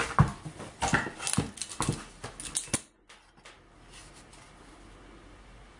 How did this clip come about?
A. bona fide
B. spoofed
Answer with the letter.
A